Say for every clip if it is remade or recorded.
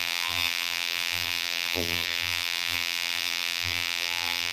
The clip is remade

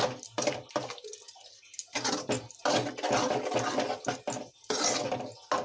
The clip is recorded